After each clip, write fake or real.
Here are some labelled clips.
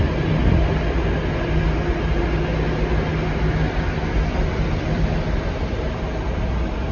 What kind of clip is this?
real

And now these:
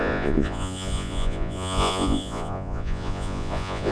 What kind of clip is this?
fake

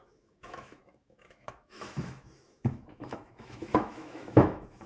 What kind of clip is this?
fake